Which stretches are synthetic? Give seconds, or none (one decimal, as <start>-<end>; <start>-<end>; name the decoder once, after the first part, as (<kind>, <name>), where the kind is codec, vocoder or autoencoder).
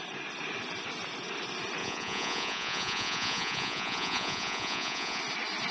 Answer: 1.8-5.2 (vocoder, Vocos)